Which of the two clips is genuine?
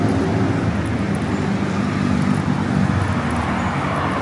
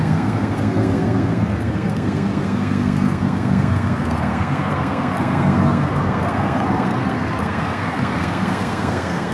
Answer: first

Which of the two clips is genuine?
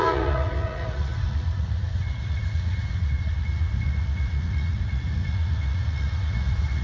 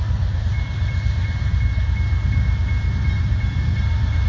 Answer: second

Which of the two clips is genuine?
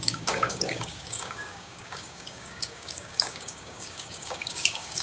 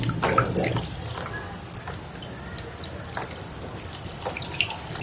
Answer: second